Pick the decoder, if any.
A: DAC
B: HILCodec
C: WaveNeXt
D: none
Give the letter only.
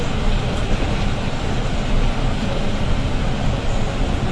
D